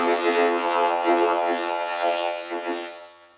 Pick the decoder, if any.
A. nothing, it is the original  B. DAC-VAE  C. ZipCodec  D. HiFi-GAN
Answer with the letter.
D